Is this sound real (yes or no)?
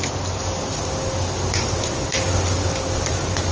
yes